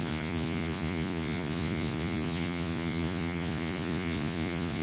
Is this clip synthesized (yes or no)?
yes